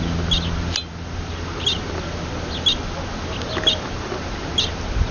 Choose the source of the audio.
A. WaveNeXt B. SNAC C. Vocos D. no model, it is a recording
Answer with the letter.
D